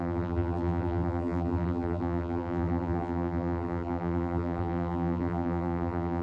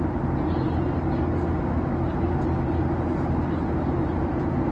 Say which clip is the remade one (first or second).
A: first